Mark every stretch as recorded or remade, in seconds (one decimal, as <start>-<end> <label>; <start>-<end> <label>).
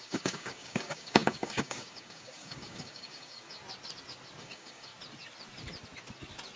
0.0-3.6 remade; 3.6-4.4 recorded; 4.4-4.9 remade; 4.9-6.6 recorded